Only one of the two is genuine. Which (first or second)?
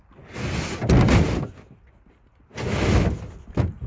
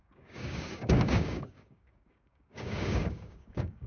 first